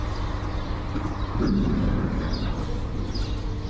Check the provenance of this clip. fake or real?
fake